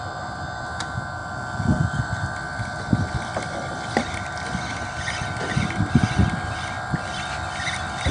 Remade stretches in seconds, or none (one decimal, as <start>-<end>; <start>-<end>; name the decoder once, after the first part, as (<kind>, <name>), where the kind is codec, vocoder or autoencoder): 0.0-8.1 (vocoder, BigVGAN v2)